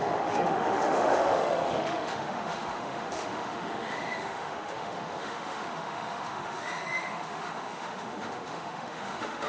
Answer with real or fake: fake